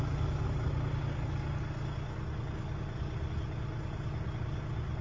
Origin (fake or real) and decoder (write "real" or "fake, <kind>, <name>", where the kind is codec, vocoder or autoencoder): real